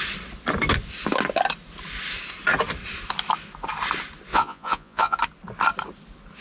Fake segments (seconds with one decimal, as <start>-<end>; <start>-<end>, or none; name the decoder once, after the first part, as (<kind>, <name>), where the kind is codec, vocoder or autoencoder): 4.3-5.2 (vocoder, Vocos)